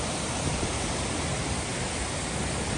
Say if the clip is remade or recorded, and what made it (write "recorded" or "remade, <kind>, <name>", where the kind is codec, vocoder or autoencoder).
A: recorded